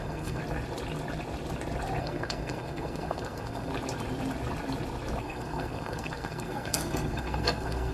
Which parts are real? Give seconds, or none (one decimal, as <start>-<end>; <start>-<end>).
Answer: 0.4-2.0; 3.7-5.2